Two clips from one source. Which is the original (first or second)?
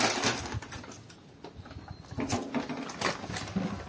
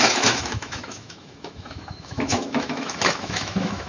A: first